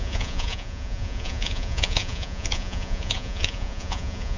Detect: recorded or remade remade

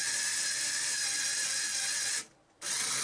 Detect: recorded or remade recorded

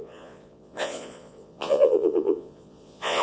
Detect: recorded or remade remade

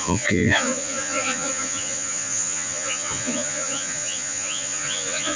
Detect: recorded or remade remade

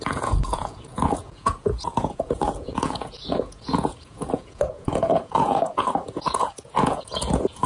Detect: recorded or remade remade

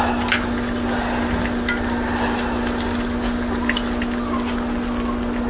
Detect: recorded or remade recorded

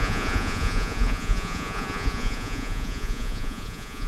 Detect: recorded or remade remade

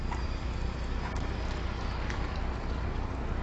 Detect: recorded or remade recorded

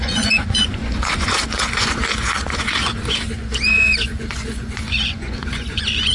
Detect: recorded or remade remade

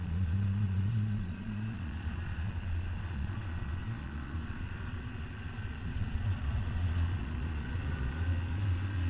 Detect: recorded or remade remade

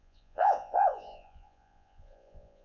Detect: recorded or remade remade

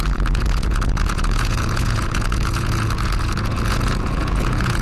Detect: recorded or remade remade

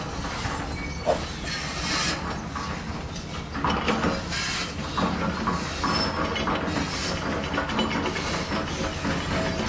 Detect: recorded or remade recorded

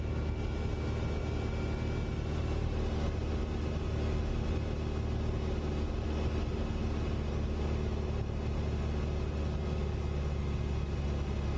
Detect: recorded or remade recorded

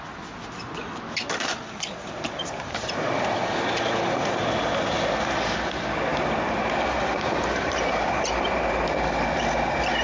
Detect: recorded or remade recorded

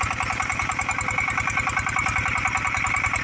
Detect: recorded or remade recorded